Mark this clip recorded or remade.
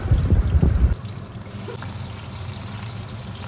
recorded